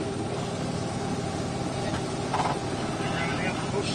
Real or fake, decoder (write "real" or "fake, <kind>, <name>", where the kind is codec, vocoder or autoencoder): real